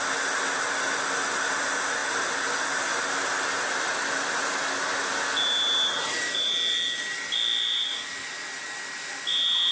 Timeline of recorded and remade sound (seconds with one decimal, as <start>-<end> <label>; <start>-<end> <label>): 0.0-9.7 recorded